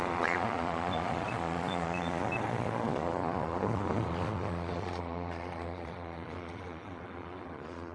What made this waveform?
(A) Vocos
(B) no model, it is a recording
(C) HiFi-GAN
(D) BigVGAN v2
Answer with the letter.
A